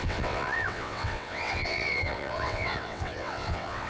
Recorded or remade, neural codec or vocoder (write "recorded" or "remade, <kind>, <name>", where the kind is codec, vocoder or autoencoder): remade, vocoder, WaveNeXt